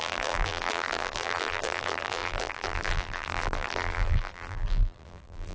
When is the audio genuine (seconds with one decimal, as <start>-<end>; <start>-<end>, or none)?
none